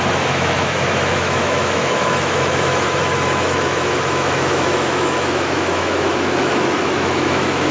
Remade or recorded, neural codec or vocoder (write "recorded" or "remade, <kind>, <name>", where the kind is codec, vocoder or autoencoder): remade, autoencoder, DAC-VAE